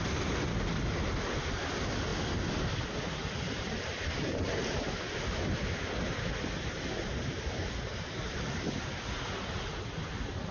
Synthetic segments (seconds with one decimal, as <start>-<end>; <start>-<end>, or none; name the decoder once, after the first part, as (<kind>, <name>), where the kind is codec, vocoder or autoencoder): none